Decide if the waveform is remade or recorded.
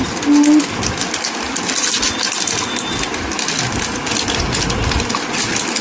recorded